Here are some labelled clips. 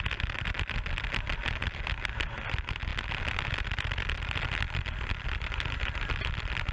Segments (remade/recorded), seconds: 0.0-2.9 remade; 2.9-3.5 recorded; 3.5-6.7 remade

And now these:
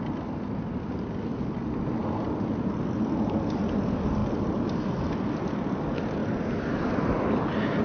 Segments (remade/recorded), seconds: 0.0-7.8 recorded

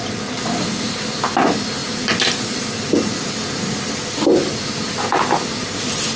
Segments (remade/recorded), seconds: 0.0-6.2 recorded

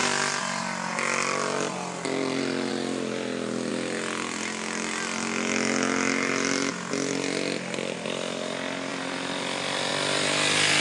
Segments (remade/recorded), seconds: 0.0-8.9 recorded; 8.9-9.9 remade; 9.9-10.8 recorded

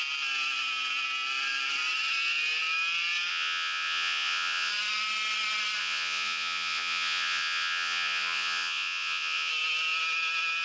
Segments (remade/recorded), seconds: 0.0-3.3 recorded; 3.3-4.7 remade; 4.7-5.8 recorded; 5.8-9.5 remade; 9.5-10.6 recorded

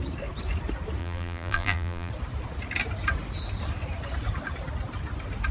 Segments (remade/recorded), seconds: 0.0-1.0 recorded; 1.0-2.1 remade; 2.1-5.5 recorded

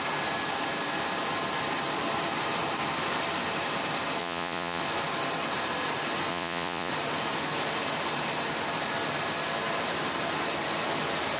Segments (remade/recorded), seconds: 0.0-4.2 recorded; 4.2-4.8 remade; 4.8-6.3 recorded; 6.3-6.9 remade; 6.9-11.4 recorded